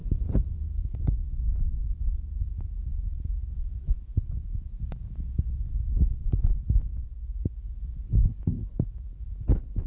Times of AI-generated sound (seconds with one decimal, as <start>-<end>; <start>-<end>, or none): 0.0-1.8